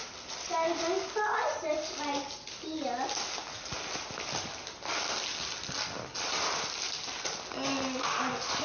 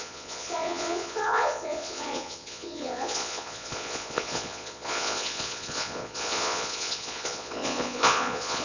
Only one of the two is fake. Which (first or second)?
second